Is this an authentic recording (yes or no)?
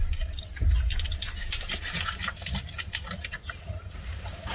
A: yes